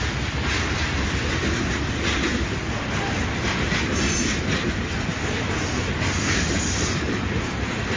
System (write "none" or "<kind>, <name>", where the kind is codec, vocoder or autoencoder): none